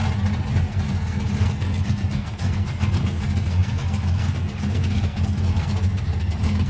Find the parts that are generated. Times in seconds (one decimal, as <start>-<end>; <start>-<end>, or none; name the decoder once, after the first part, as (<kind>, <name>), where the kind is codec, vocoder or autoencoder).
0.5-6.7 (codec, SNAC)